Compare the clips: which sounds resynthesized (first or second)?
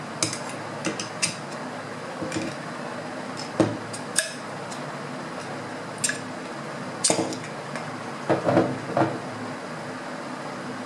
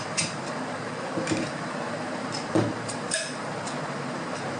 second